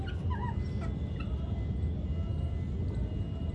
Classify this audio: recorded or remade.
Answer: recorded